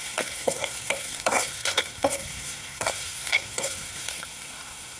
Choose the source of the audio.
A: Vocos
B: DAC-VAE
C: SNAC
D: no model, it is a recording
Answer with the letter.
C